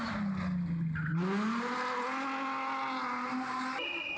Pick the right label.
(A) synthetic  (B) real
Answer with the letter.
B